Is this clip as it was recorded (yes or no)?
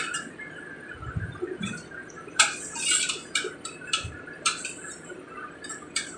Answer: no